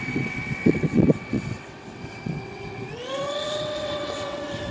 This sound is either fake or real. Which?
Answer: fake